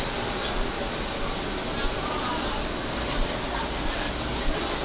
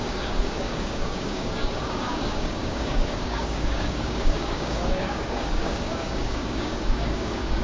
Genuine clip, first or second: first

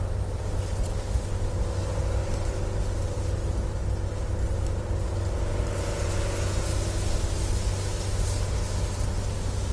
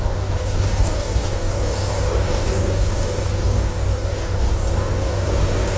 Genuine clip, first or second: first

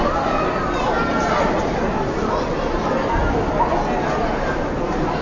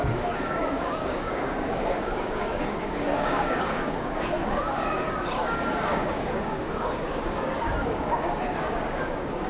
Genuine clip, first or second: first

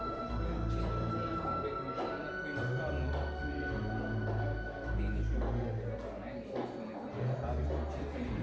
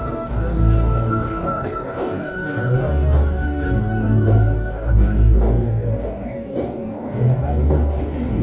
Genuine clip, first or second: first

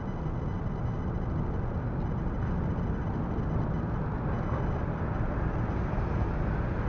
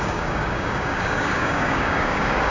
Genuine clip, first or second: first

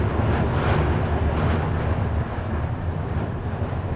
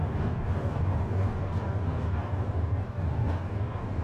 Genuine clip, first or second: first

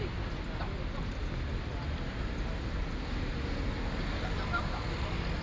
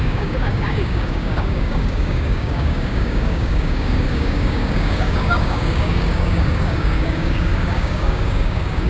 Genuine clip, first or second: first